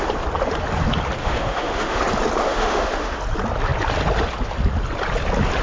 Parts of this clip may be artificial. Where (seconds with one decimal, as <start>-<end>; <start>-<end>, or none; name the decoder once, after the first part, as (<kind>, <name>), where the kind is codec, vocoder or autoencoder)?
1.2-2.0 (autoencoder, DAC-VAE); 2.4-3.2